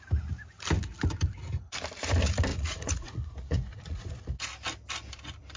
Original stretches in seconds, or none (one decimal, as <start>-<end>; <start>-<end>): 0.0-2.5; 4.0-5.6